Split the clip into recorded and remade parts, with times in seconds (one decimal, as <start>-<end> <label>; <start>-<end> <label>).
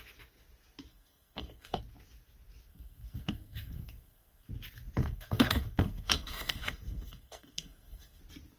0.0-0.9 recorded; 0.9-1.8 remade; 1.8-2.7 recorded; 2.7-4.5 remade; 4.5-5.0 recorded; 5.0-8.2 remade; 8.2-8.6 recorded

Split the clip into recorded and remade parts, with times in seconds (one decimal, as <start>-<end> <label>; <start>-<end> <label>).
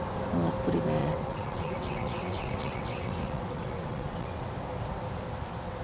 0.0-1.0 recorded; 1.0-4.5 remade; 4.5-5.8 recorded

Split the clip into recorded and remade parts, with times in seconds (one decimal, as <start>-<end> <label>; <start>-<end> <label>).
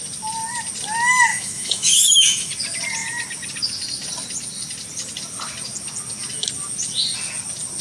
0.0-1.3 recorded; 1.3-2.5 remade; 2.5-7.8 recorded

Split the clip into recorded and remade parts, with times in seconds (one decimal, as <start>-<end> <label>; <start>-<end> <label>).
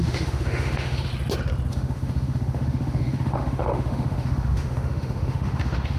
0.0-1.1 remade; 1.1-1.7 recorded; 1.7-6.0 remade